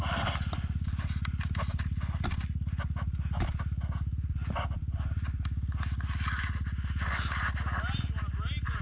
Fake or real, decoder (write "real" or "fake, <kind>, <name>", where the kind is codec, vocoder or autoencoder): real